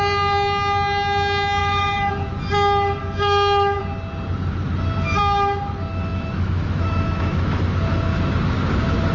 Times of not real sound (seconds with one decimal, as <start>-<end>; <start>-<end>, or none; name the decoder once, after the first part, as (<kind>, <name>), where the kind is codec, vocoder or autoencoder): 1.6-2.1 (autoencoder, DAC-VAE); 3.0-3.8; 6.1-7.6